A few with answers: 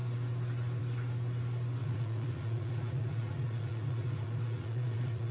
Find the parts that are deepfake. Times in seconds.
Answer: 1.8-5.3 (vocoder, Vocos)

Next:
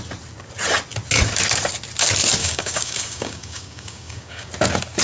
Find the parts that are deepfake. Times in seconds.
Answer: 2.4-4.5 (codec, DAC)

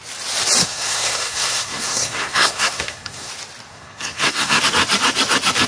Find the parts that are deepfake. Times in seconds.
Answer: 0.6-3.3 (codec, SNAC); 3.7-4.6

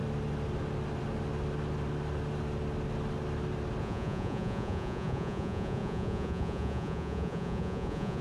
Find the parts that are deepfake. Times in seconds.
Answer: 3.8-8.2 (vocoder, Vocos)

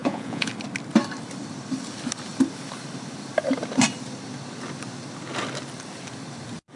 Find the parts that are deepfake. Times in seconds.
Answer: 0.0-0.5 (vocoder, Vocos)

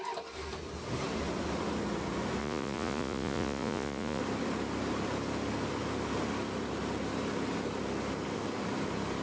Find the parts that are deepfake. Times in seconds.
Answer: 2.4-4.2 (vocoder, Vocos)